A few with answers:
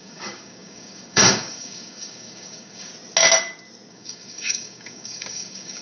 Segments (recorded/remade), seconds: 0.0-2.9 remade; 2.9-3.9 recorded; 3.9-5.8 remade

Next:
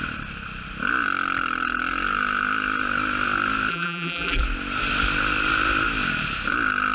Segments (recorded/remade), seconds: 0.0-3.7 recorded; 3.7-4.4 remade; 4.4-6.9 recorded

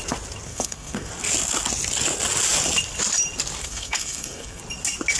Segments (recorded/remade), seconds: 0.0-0.5 recorded; 0.5-1.1 remade; 1.1-3.6 recorded; 3.6-4.6 remade; 4.6-5.2 recorded

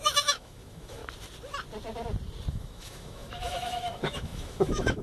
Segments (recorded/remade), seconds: 0.0-1.0 remade; 1.0-2.5 recorded; 2.5-5.0 remade

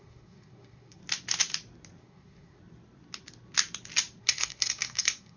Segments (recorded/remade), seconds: 0.0-1.0 remade; 1.0-2.0 recorded; 2.0-2.6 remade; 2.6-4.2 recorded; 4.2-5.4 remade

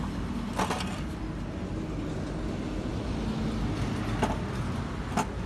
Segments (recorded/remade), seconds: 0.0-5.5 recorded